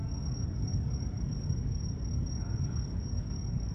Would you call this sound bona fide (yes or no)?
no